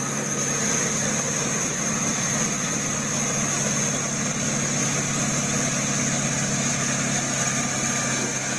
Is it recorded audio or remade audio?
recorded